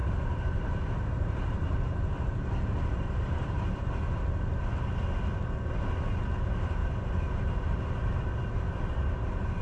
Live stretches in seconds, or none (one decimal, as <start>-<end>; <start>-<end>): 3.9-6.8